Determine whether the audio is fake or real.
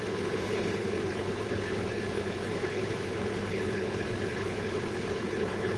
fake